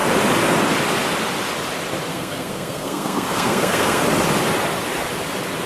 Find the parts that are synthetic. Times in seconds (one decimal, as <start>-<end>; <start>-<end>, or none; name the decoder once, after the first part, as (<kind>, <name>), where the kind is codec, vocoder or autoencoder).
2.1-4.0 (codec, SNAC)